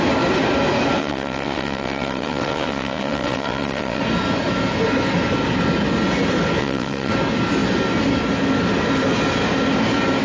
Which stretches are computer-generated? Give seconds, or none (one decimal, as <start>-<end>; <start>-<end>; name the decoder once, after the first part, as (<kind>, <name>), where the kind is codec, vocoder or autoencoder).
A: 1.0-4.0 (vocoder, WaveNeXt); 6.6-7.1